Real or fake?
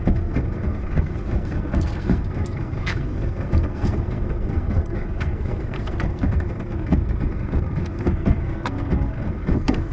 fake